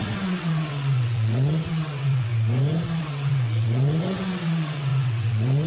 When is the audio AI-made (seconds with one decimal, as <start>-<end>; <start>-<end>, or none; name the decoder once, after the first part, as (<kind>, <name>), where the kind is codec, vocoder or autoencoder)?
0.0-2.3 (vocoder, WaveNeXt); 3.0-5.7